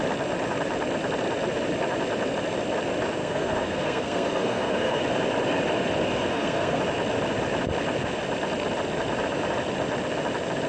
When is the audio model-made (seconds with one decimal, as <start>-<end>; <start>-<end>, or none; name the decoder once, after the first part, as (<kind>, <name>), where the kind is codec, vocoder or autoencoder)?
3.2-5.0 (codec, SNAC); 6.3-6.8